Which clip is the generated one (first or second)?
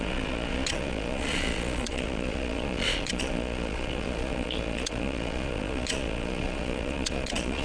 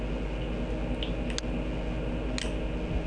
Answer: first